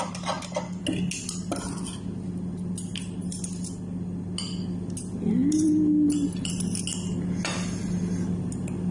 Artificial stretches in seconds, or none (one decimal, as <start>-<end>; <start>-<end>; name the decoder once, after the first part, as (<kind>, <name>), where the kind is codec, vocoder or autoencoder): 5.4-6.5 (vocoder, BigVGAN v2)